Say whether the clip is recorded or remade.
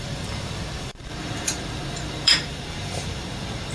remade